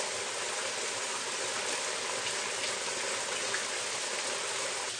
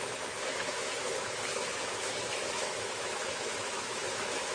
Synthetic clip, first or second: second